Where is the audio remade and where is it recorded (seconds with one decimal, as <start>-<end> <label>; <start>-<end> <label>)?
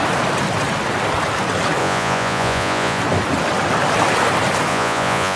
0.0-1.8 recorded; 1.8-3.0 remade; 3.0-4.7 recorded; 4.7-5.4 remade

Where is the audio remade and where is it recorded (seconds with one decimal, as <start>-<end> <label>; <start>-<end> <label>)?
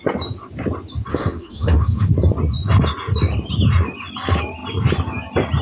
0.0-1.1 recorded; 1.1-2.1 remade; 2.1-5.6 recorded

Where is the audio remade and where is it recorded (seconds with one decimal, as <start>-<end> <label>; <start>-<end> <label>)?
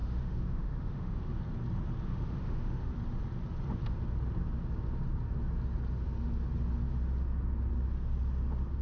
0.0-1.4 remade; 1.4-2.1 recorded; 2.1-2.9 remade; 2.9-8.8 recorded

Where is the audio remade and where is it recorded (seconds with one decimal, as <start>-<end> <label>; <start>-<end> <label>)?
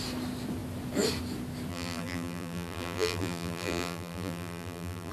0.0-1.7 recorded; 1.7-5.1 remade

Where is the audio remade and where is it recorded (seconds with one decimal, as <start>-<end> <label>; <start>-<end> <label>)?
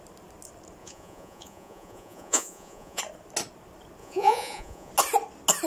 0.0-0.8 recorded; 0.8-3.0 remade; 3.0-4.0 recorded; 4.0-4.9 remade; 4.9-5.7 recorded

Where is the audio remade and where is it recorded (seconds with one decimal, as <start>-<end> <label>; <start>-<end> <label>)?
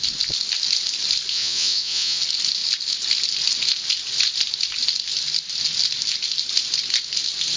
0.0-1.3 recorded; 1.3-2.2 remade; 2.2-7.6 recorded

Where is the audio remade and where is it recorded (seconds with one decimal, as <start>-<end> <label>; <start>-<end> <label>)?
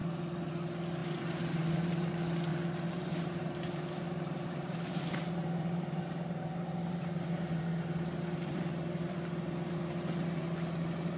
0.0-1.0 recorded; 1.0-2.1 remade; 2.1-2.5 recorded; 2.5-7.7 remade; 7.7-11.2 recorded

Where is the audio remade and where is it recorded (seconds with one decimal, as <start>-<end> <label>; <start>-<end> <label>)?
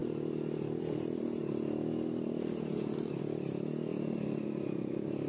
0.0-5.3 recorded